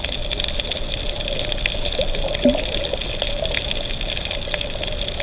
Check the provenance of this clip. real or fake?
real